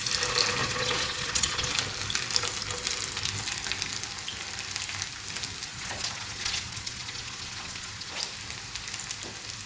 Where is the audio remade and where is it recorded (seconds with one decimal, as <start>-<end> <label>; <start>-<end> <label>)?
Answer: 0.0-0.6 recorded; 0.6-1.7 remade; 1.7-5.7 recorded; 5.7-8.2 remade; 8.2-9.7 recorded